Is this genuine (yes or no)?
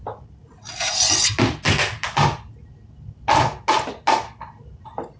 yes